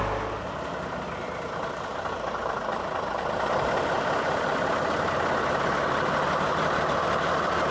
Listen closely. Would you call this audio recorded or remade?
recorded